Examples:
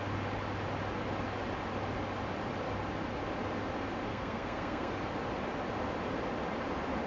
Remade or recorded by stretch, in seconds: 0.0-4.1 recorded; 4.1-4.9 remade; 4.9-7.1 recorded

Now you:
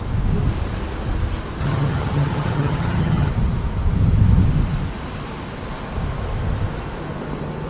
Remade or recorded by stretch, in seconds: 0.0-1.6 recorded; 1.6-3.3 remade; 3.3-7.7 recorded

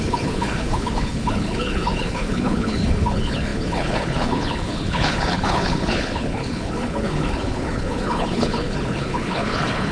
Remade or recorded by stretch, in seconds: 0.0-9.9 remade